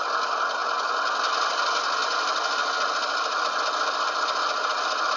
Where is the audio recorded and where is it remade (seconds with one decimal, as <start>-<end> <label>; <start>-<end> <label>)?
0.0-5.2 recorded